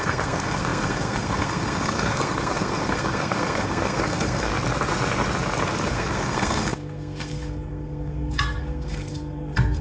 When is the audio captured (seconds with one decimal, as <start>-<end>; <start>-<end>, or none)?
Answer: 4.5-5.9